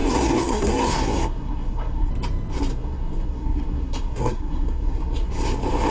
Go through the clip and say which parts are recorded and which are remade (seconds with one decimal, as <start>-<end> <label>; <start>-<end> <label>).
0.0-2.1 remade; 2.1-2.7 recorded; 2.7-5.3 remade; 5.3-5.9 recorded

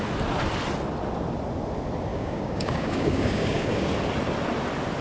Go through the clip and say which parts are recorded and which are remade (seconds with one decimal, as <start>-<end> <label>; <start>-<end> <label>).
0.0-2.1 recorded; 2.1-3.9 remade; 3.9-5.0 recorded

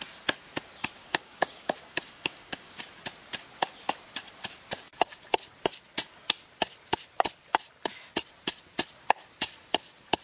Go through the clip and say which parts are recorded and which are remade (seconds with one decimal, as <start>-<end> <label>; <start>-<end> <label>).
0.0-1.0 recorded; 1.0-2.8 remade; 2.8-10.2 recorded

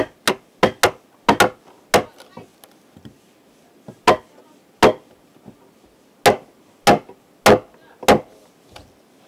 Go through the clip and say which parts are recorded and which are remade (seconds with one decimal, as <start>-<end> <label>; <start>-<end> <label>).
0.0-9.3 recorded

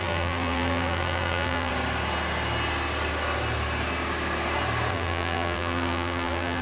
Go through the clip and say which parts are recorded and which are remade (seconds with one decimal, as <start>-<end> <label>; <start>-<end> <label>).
0.0-1.7 remade; 1.7-4.9 recorded; 4.9-6.6 remade

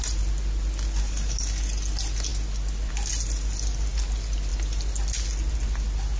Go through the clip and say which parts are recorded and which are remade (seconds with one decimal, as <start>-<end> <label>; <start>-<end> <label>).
0.0-6.2 recorded

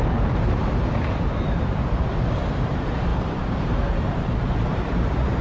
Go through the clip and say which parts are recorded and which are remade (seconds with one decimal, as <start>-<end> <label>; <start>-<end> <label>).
0.0-1.8 remade; 1.8-2.5 recorded; 2.5-5.4 remade